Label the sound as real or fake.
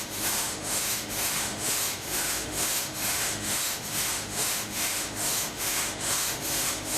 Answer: fake